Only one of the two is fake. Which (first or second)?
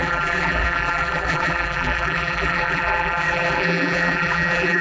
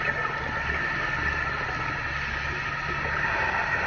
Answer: first